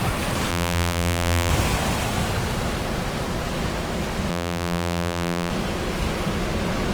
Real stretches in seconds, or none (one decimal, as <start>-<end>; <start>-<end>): 0.0-0.5; 1.5-4.3; 5.5-6.9